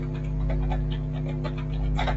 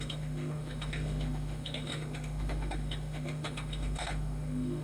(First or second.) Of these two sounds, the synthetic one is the second